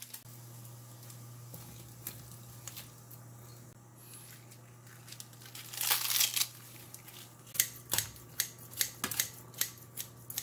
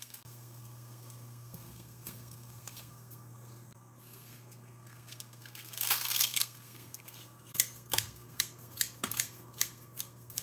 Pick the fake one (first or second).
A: second